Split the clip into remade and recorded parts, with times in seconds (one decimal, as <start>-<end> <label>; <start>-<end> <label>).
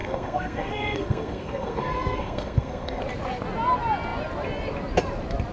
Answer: 0.0-3.0 remade; 3.0-5.5 recorded